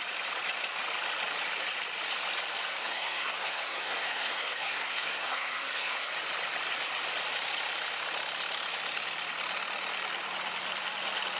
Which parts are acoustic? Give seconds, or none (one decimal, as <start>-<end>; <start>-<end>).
0.0-2.7; 6.1-11.4